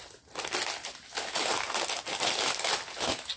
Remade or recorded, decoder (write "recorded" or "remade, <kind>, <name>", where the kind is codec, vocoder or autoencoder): recorded